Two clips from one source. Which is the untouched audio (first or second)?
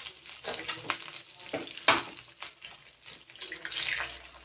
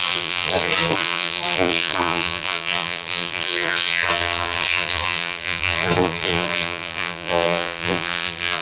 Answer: first